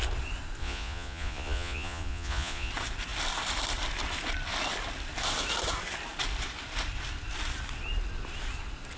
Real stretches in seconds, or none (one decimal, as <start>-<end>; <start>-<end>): 0.0-0.6; 2.7-9.0